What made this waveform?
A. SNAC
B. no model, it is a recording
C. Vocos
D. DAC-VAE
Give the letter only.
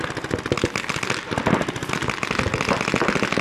B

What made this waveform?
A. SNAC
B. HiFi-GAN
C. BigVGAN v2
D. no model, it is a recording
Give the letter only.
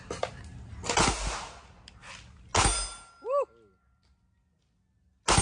D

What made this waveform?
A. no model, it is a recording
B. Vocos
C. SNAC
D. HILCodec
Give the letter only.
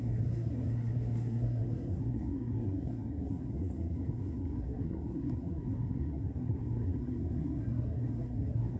C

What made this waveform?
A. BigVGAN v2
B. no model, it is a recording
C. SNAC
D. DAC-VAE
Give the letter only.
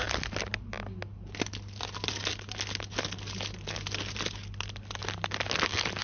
B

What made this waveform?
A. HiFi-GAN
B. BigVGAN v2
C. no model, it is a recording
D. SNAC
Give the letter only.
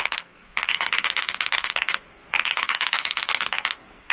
D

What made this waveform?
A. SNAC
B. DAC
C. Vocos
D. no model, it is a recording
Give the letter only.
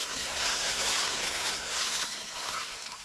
A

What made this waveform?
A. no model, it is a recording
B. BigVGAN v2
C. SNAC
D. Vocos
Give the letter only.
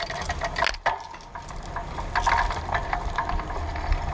A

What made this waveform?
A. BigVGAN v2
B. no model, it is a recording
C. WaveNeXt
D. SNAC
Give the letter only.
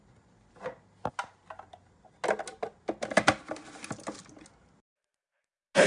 B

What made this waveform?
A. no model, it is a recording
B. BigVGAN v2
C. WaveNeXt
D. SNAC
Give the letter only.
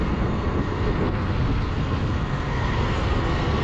D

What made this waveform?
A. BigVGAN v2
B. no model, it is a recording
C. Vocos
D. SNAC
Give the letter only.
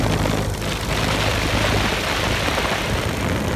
B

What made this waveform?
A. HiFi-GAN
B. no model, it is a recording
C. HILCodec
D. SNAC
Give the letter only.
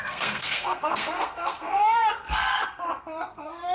D